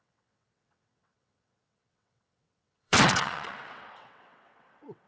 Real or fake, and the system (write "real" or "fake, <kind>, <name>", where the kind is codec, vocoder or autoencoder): fake, vocoder, WaveNeXt